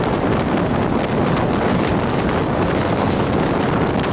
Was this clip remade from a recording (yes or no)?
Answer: no